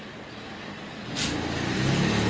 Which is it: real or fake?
real